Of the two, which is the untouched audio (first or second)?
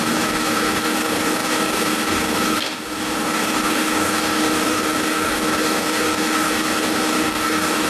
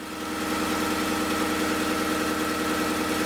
second